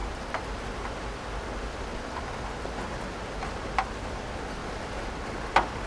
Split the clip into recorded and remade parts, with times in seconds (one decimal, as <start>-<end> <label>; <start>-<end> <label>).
0.0-0.6 remade; 0.6-1.9 recorded; 1.9-2.6 remade; 2.6-4.6 recorded; 4.6-5.1 remade; 5.1-5.9 recorded